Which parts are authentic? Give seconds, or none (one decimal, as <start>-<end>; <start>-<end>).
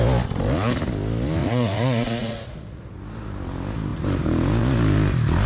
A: 0.0-1.4; 2.8-5.5